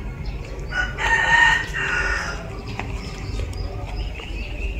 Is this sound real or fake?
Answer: real